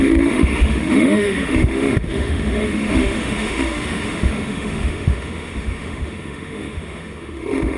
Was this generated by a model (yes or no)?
yes